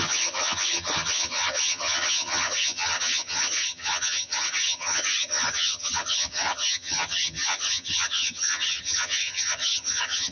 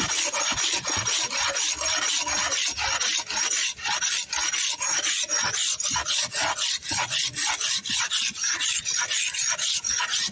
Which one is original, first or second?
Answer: second